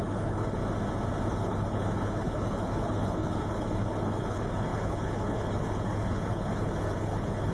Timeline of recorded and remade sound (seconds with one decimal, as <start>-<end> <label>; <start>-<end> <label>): 0.0-0.6 remade; 0.6-1.3 recorded; 1.3-7.5 remade